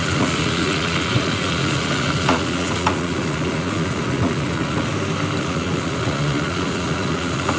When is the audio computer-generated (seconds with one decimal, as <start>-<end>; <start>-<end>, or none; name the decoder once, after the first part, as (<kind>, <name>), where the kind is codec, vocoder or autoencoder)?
0.0-4.9 (vocoder, Vocos); 5.4-7.6